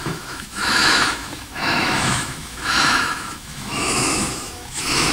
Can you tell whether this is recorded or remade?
remade